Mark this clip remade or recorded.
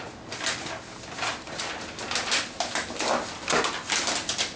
recorded